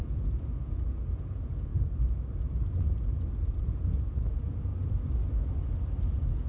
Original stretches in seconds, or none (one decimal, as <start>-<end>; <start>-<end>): 1.7-3.5; 4.7-6.1